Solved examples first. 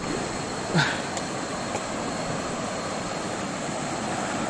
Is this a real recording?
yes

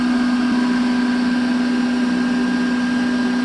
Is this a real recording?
yes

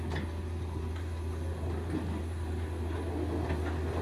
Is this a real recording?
yes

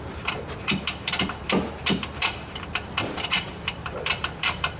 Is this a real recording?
no